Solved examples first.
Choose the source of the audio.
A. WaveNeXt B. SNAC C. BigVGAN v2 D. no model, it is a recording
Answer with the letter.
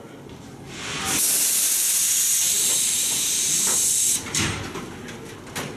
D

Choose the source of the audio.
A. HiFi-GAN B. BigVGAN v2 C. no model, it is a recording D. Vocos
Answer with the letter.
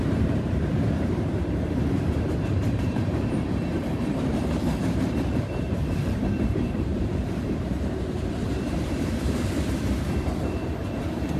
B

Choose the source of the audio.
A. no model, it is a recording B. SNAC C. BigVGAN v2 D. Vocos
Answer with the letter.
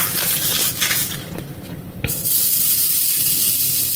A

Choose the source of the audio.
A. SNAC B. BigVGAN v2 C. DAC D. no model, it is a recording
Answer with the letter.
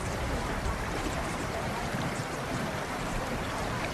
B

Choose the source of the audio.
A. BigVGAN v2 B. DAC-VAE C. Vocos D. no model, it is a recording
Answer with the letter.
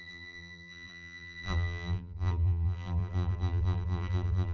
A